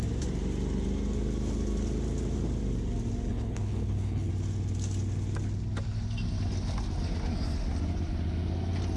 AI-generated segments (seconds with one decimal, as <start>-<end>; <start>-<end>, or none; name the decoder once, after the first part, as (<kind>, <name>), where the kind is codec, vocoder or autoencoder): 3.3-4.3 (codec, HILCodec)